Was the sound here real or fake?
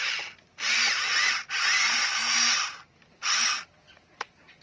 real